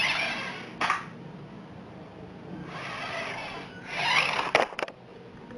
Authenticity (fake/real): real